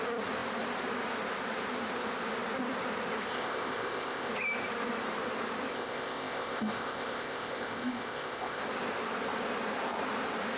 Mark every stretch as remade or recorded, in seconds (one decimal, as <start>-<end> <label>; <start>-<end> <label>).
0.0-3.3 recorded; 3.3-4.3 remade; 4.3-5.7 recorded; 5.7-8.6 remade; 8.6-10.6 recorded